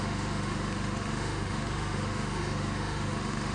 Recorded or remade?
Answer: remade